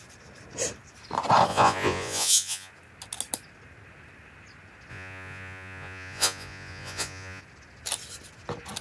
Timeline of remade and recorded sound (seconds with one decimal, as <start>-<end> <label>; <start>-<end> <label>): 0.0-1.5 recorded; 1.5-2.7 remade; 2.7-4.9 recorded; 4.9-7.4 remade; 7.4-8.8 recorded